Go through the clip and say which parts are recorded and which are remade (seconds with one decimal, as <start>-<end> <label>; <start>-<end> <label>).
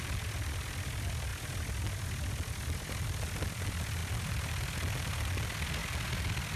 0.0-6.6 recorded